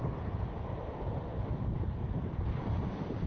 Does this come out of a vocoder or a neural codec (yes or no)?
yes